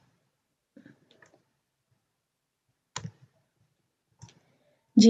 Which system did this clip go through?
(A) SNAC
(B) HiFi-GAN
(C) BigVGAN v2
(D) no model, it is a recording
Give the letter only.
D